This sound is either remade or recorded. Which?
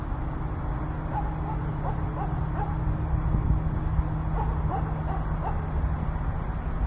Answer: recorded